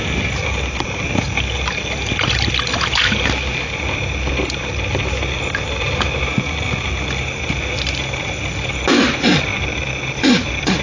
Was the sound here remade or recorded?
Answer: recorded